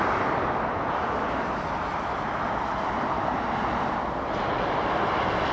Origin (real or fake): real